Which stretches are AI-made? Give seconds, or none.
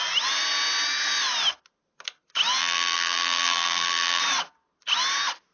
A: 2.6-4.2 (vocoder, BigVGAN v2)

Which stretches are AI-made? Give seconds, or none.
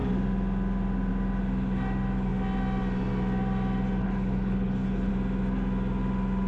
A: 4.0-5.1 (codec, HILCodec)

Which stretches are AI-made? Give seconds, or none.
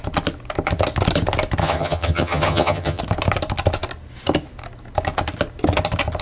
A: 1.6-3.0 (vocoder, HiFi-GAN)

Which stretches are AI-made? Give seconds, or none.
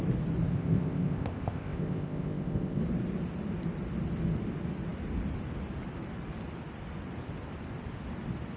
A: 0.5-2.8 (codec, ZipCodec)